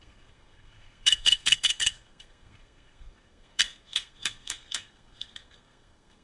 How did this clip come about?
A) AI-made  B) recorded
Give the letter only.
A